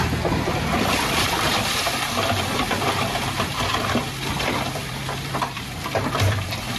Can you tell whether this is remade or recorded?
remade